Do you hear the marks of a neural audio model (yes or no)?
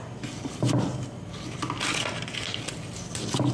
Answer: no